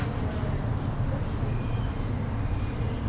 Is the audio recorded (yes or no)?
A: yes